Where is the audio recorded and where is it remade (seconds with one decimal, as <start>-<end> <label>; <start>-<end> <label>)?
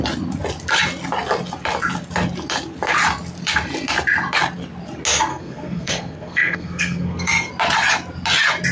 0.0-5.3 recorded; 5.3-7.5 remade; 7.5-8.7 recorded